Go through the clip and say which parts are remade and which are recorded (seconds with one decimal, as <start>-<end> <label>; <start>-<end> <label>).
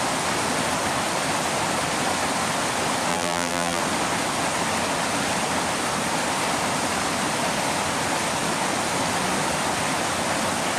0.0-3.1 recorded; 3.1-3.8 remade; 3.8-10.8 recorded